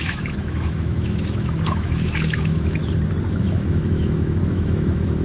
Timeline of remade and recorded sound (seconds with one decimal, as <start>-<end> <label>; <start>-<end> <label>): 0.0-2.8 remade; 2.8-3.3 recorded; 3.3-5.2 remade